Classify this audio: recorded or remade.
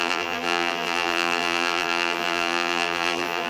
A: remade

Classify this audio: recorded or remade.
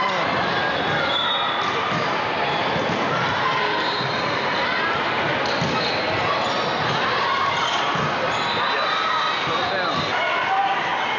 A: recorded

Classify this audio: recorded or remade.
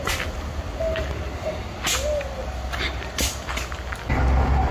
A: recorded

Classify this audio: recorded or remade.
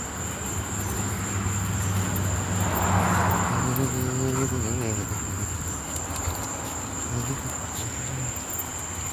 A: recorded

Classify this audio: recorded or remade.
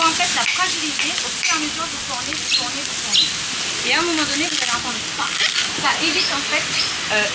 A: recorded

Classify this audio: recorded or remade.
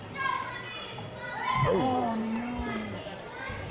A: remade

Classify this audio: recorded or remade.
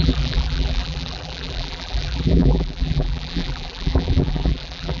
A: remade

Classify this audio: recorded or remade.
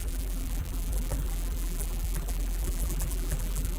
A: remade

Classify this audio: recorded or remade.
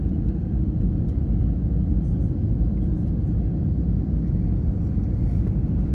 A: recorded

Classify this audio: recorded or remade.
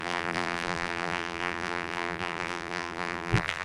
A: remade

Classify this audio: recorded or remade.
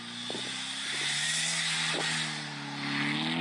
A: recorded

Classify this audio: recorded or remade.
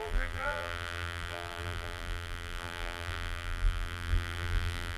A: remade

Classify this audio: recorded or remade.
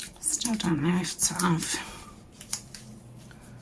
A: remade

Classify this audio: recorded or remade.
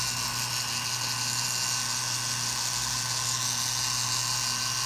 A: recorded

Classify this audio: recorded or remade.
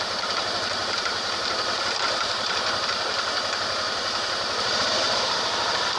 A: remade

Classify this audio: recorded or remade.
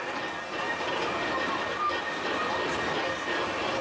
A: recorded